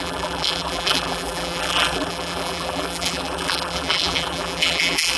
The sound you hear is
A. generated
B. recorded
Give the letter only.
A